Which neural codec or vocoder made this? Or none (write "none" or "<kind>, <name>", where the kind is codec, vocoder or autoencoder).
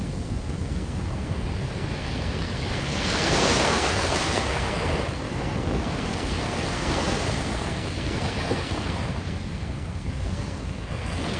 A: codec, SNAC